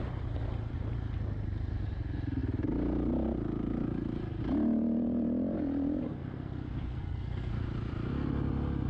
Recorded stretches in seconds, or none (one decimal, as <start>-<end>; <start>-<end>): 0.0-6.2; 7.6-8.9